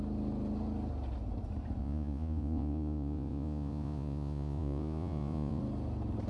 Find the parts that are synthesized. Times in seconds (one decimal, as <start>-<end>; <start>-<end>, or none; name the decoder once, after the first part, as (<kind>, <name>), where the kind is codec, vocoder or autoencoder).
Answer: 1.8-5.6 (vocoder, Vocos)